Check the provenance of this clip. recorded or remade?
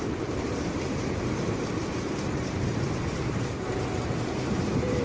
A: remade